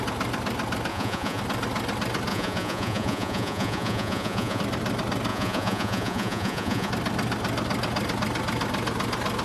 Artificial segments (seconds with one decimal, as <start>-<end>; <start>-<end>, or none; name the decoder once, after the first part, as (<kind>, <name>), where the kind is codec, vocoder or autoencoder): 0.9-1.4 (vocoder, Vocos); 2.3-4.6; 5.3-6.9